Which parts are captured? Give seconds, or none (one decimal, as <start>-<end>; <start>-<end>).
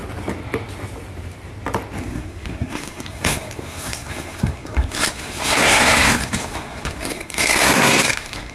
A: 0.0-2.0